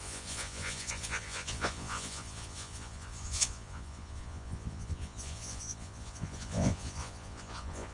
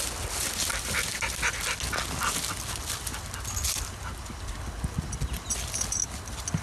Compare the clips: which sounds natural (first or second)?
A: second